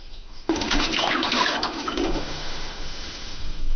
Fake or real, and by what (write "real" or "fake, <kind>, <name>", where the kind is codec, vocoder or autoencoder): fake, autoencoder, DAC-VAE